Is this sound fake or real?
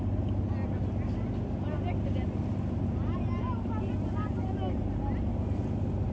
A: real